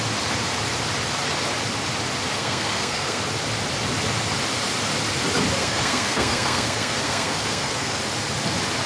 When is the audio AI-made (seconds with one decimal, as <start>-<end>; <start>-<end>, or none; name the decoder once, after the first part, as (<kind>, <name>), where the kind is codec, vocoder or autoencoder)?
2.4-3.2 (codec, SNAC); 5.6-8.0